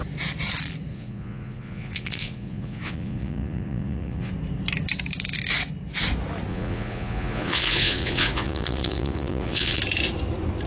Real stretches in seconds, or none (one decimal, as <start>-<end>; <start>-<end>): 0.0-0.9; 4.3-6.5; 9.8-10.7